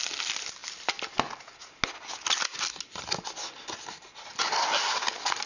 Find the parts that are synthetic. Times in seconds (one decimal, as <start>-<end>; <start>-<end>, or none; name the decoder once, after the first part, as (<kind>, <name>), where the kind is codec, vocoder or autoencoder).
none